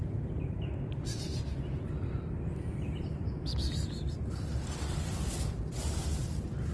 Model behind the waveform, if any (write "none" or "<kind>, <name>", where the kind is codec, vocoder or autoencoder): vocoder, BigVGAN v2